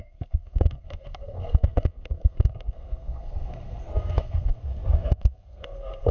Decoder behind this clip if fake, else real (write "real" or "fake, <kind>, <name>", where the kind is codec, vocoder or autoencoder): fake, codec, SNAC